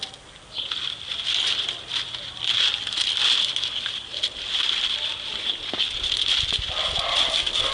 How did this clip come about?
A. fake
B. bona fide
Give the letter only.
B